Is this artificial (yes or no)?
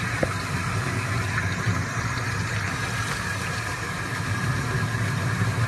no